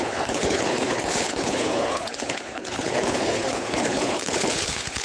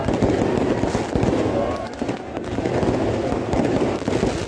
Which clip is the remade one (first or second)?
first